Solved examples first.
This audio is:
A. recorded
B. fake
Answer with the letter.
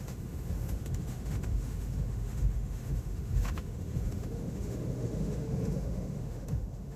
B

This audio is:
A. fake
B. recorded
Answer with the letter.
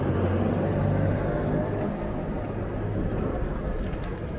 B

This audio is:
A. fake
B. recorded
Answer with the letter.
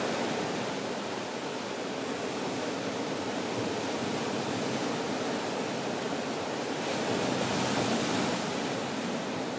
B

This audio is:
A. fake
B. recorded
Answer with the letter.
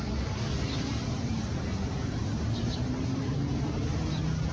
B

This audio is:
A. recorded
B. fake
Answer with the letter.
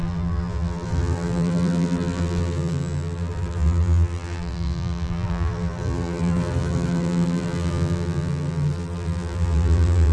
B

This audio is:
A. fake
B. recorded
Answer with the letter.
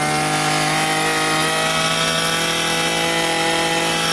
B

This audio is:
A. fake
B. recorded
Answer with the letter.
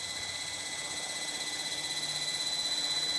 B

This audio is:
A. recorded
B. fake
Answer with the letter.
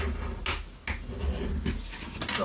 A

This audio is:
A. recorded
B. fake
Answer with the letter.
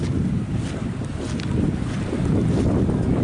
A